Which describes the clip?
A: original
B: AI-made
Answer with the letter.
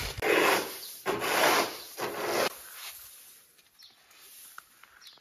A